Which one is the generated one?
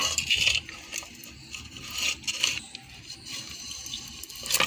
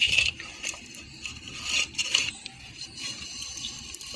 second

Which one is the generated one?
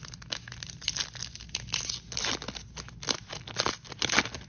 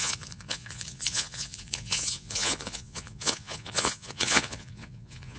second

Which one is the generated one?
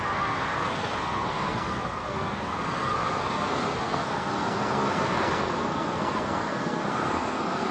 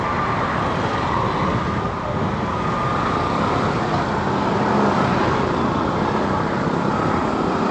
first